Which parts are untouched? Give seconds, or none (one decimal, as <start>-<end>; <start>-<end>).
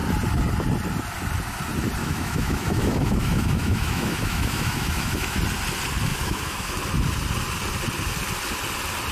0.0-2.0; 5.4-6.1; 6.7-9.1